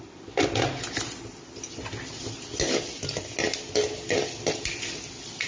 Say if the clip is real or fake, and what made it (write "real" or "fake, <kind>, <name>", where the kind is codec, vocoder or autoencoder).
real